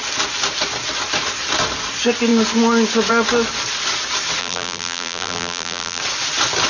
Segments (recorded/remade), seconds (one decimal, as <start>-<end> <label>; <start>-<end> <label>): 0.0-4.4 recorded; 4.4-6.0 remade; 6.0-6.7 recorded